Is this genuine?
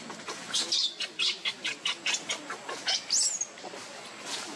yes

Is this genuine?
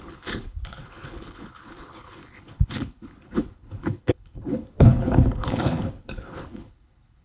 no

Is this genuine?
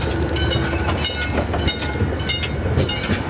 yes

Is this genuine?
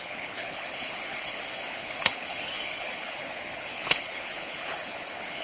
no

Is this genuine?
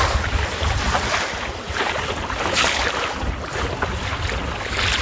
yes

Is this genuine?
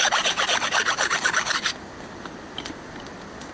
yes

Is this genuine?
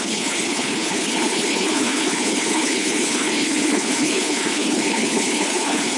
no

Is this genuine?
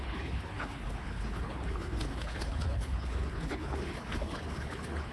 no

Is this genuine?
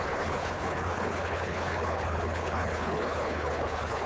no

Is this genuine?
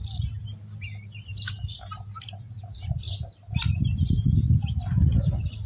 yes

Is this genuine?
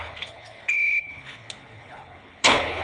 no